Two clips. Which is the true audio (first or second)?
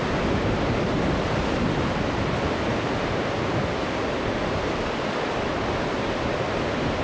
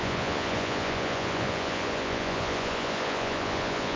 first